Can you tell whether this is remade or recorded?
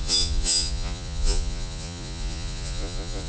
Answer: remade